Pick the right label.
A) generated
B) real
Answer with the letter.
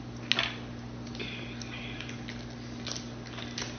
B